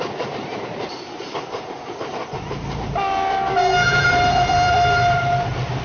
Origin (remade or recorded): remade